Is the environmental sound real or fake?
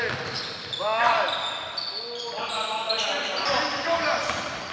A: real